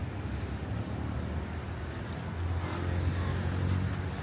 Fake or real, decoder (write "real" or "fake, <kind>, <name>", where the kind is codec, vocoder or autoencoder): real